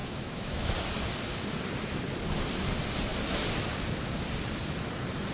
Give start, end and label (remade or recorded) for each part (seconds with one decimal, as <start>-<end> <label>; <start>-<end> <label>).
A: 0.0-0.7 remade; 0.7-5.3 recorded